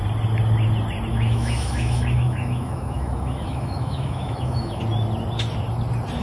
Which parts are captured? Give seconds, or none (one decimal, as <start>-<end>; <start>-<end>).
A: 0.0-1.1; 4.8-6.2